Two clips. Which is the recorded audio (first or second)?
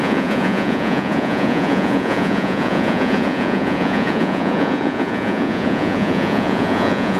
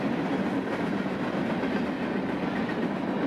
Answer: second